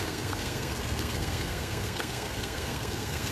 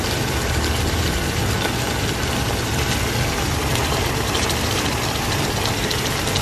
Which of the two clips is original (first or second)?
second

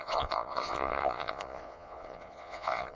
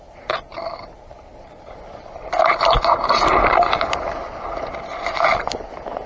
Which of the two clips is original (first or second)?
second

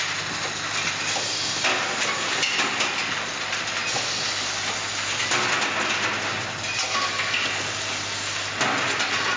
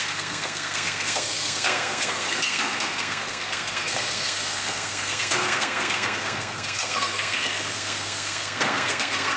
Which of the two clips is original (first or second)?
first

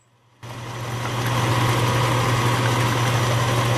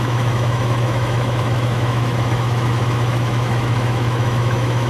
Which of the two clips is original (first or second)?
first